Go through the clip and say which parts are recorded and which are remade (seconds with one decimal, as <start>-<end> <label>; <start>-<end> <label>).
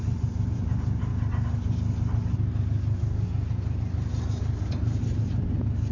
0.0-1.1 remade; 1.1-4.6 recorded; 4.6-5.9 remade